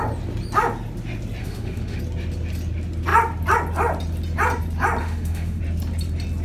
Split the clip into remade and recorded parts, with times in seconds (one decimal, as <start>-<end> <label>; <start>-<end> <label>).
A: 0.0-1.4 recorded; 1.4-2.0 remade; 2.0-5.0 recorded; 5.0-5.6 remade; 5.6-6.4 recorded